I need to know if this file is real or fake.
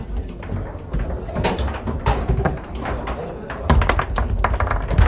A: real